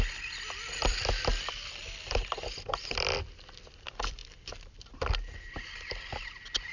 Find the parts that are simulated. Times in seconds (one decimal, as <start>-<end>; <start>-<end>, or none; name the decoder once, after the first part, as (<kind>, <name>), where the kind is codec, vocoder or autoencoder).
0.0-6.7 (vocoder, BigVGAN v2)